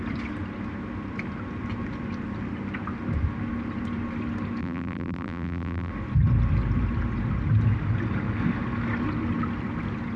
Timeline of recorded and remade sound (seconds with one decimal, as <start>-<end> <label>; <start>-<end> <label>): 0.0-4.6 recorded; 4.6-5.9 remade; 5.9-10.2 recorded